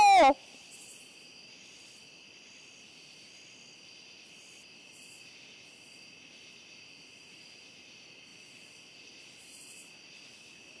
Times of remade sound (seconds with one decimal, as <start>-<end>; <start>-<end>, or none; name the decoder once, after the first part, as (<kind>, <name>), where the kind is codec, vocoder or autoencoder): none